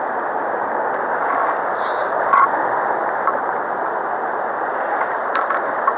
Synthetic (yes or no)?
no